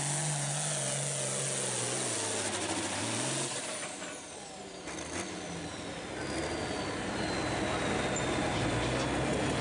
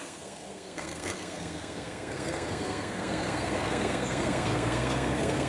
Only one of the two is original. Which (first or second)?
first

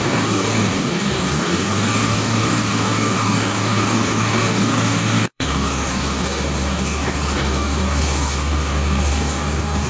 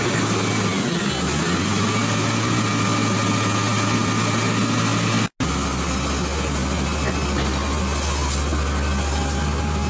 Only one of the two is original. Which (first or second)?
second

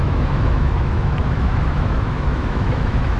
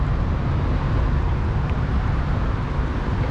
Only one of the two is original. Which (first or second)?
second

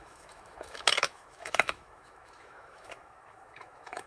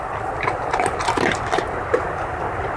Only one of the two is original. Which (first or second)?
second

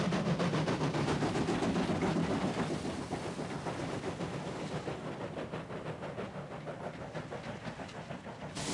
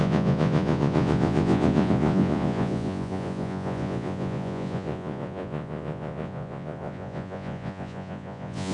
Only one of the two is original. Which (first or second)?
first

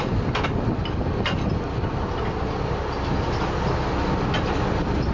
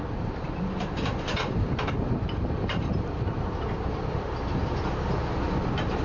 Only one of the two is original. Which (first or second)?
first